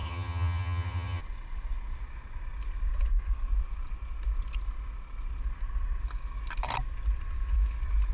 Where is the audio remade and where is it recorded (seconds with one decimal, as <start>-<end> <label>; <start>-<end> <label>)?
0.0-1.2 remade; 1.2-8.1 recorded